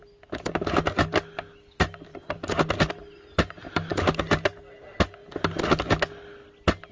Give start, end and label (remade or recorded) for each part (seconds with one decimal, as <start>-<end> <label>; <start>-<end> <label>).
0.0-6.9 recorded